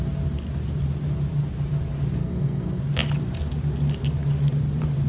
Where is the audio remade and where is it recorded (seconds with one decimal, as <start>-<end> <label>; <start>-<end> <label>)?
0.0-2.2 recorded; 2.2-2.8 remade; 2.8-5.1 recorded